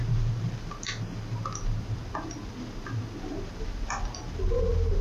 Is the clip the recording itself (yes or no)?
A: yes